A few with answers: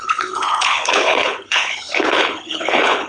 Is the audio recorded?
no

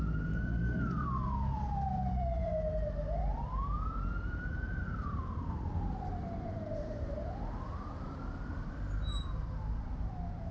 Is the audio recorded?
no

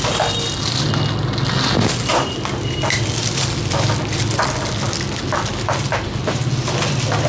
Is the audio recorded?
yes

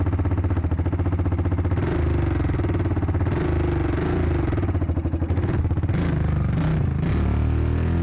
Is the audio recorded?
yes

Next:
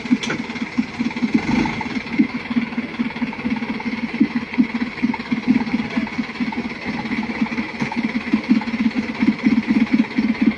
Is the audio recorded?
yes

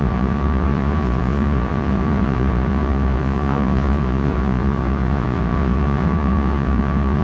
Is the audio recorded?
no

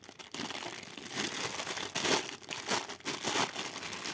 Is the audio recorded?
yes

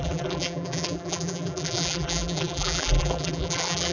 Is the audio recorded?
no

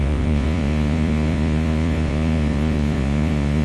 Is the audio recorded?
no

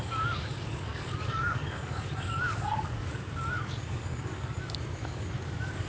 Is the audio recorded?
no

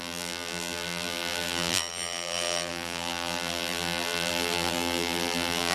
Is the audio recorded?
no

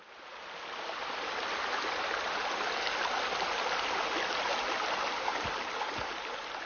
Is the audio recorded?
yes